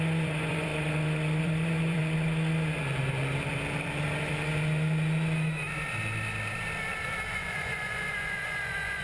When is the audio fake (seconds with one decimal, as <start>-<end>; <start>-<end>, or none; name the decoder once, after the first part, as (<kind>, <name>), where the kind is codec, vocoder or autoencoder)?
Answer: 0.0-0.7 (vocoder, Vocos); 1.4-2.0; 7.3-9.0